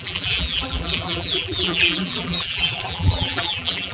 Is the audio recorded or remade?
remade